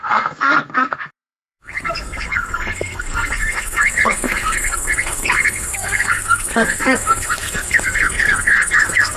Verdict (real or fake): fake